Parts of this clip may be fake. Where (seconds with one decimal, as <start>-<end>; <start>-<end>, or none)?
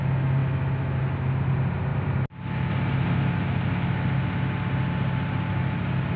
none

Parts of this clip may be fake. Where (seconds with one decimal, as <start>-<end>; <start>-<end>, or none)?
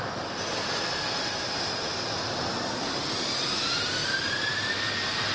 4.0-4.8